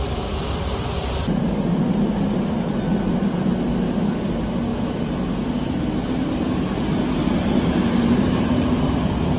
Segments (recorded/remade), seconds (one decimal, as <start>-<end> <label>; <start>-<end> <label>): 0.0-9.4 recorded